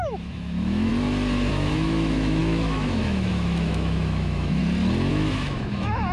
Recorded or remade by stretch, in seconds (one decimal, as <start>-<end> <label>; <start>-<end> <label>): 0.0-0.9 remade; 0.9-1.5 recorded; 1.5-4.6 remade; 4.6-5.1 recorded; 5.1-6.1 remade

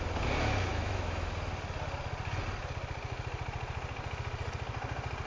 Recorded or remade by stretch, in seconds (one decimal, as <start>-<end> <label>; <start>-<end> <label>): 0.0-0.7 recorded; 0.7-1.3 remade; 1.3-5.3 recorded

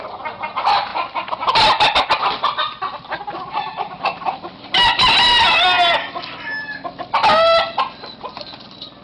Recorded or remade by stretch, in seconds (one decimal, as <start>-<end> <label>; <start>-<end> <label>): 0.0-9.0 recorded

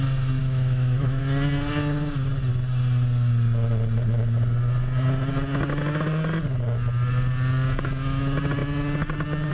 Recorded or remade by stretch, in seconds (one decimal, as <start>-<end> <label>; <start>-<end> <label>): 0.0-0.4 recorded; 0.4-1.2 remade; 1.2-9.5 recorded

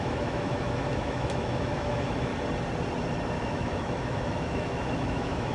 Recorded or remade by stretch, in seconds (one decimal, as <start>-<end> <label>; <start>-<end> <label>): 0.0-2.3 remade; 2.3-3.4 recorded; 3.4-5.5 remade

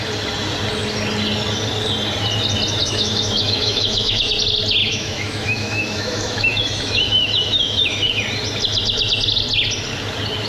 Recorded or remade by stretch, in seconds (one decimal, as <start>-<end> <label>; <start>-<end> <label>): 0.0-2.8 recorded; 2.8-4.3 remade; 4.3-4.8 recorded; 4.8-8.2 remade; 8.2-10.5 recorded